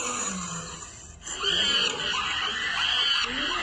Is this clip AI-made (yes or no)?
no